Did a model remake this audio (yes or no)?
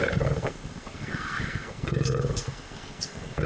yes